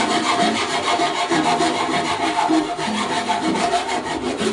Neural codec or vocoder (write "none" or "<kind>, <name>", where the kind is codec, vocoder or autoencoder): vocoder, BigVGAN v2